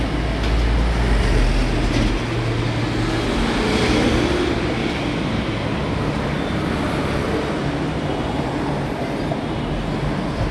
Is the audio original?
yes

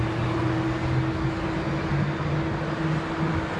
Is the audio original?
yes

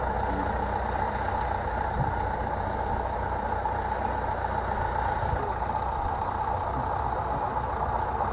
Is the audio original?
yes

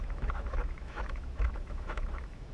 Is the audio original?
no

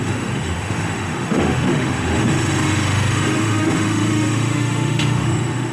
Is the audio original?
no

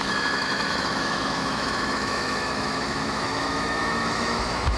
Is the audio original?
no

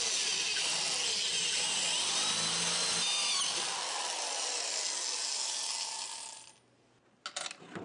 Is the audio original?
yes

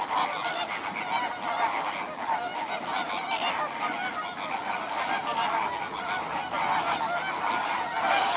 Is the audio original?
yes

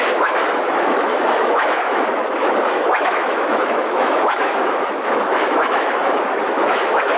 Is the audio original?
no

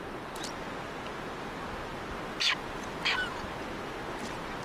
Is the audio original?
yes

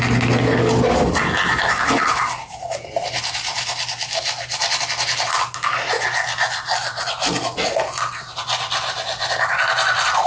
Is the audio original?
yes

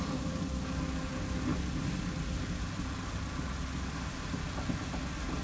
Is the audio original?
yes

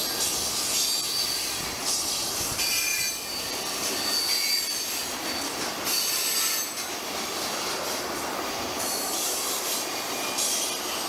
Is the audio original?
yes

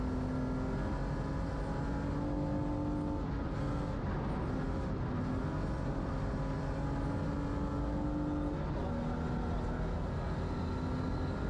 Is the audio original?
yes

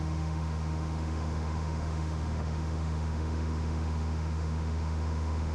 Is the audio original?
no